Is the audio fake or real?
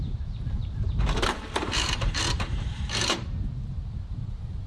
fake